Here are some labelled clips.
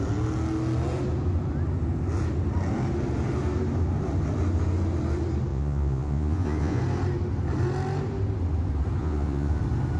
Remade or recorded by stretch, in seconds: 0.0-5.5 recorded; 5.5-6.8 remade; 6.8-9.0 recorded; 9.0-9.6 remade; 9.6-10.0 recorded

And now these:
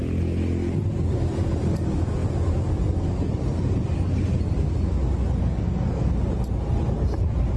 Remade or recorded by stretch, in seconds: 0.0-5.4 recorded; 5.4-6.1 remade; 6.1-7.6 recorded